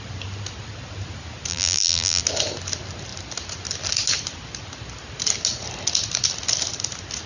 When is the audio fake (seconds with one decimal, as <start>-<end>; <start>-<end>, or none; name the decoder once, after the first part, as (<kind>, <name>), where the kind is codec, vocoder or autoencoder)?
1.5-2.2 (vocoder, BigVGAN v2)